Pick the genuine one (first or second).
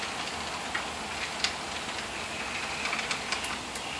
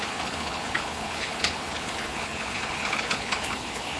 first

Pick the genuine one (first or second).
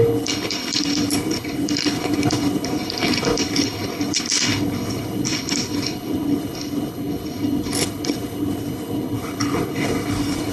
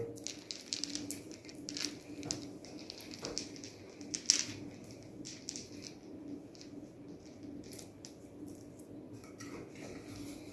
second